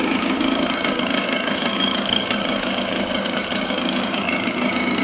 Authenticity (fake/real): fake